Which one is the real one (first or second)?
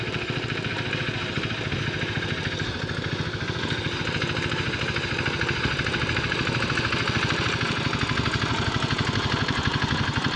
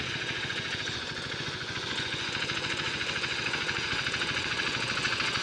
first